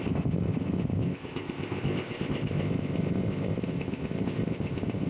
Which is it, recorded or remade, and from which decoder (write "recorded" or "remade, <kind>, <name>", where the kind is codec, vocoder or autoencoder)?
remade, codec, ZipCodec